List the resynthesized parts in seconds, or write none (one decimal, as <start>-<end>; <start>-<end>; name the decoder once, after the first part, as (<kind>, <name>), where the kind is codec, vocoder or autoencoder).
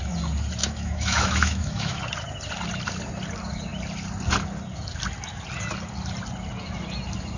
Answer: 0.6-2.0 (autoencoder, DAC-VAE)